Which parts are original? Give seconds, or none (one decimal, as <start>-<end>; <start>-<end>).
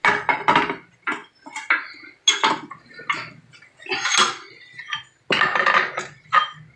0.0-6.8